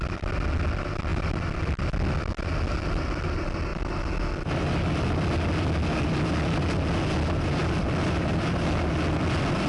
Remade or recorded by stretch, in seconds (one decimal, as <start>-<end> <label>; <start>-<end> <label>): 0.0-9.7 recorded